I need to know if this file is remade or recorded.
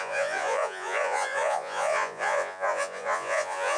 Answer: remade